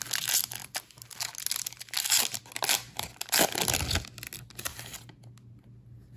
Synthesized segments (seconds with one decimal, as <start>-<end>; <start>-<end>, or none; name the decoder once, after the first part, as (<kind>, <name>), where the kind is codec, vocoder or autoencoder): none